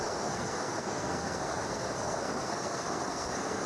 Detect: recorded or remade remade